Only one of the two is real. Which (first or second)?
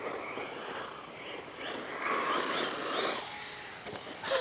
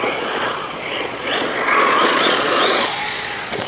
first